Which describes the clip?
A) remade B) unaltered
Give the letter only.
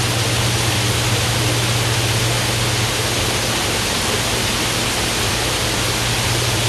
B